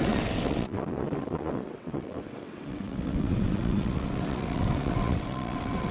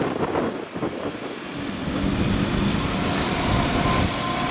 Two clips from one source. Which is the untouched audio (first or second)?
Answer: second